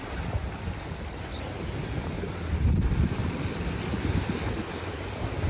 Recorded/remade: recorded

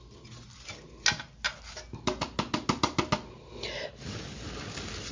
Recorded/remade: recorded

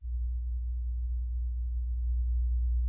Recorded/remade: recorded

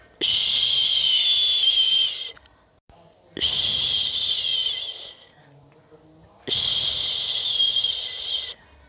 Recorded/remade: recorded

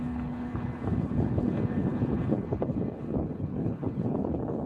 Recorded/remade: remade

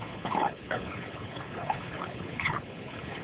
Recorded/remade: remade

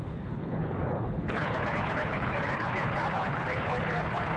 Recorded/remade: remade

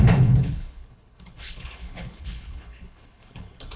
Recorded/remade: remade